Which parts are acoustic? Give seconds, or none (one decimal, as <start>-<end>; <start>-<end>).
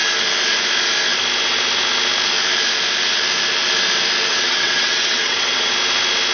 0.0-4.3; 5.7-6.3